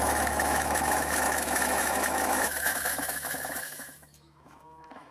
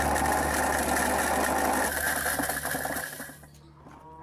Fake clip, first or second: first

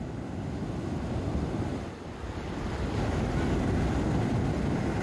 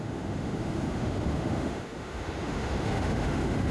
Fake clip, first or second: second